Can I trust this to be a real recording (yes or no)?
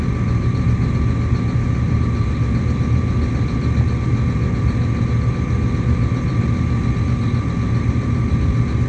yes